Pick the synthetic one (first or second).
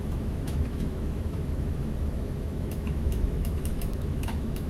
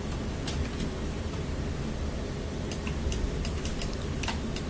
first